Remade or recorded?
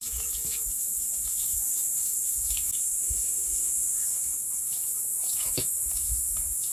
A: remade